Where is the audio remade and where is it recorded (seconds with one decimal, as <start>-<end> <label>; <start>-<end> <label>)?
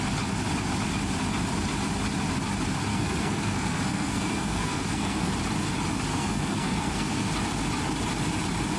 0.0-2.9 recorded; 2.9-5.3 remade; 5.3-6.1 recorded; 6.1-7.3 remade; 7.3-8.8 recorded